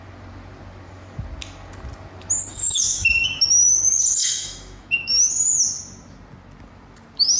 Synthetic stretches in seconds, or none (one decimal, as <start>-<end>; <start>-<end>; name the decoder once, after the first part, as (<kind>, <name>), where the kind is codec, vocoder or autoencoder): 2.5-3.4 (autoencoder, DAC-VAE); 4.2-5.3